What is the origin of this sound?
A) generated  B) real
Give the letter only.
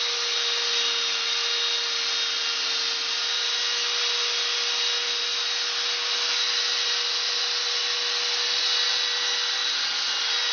B